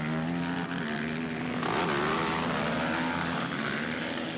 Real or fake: real